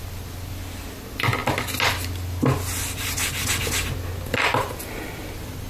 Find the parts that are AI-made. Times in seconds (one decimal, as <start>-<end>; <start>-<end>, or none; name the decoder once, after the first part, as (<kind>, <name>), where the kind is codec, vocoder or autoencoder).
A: none